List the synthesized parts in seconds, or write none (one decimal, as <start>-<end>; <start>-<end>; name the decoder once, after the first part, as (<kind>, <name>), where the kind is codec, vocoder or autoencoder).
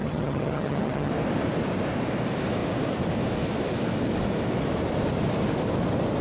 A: 0.0-1.1 (vocoder, HiFi-GAN)